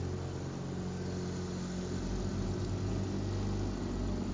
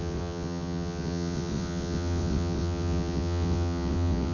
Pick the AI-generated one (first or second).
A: second